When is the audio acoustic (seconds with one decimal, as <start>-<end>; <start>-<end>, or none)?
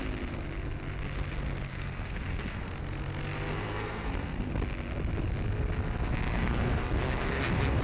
0.0-1.7; 2.7-3.5; 4.5-6.3